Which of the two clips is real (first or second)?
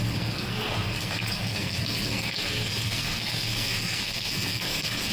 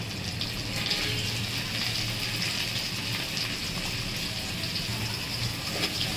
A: second